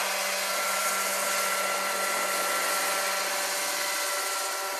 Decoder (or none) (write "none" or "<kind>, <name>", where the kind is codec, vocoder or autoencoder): none